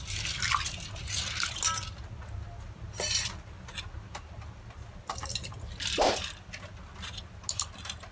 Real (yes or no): yes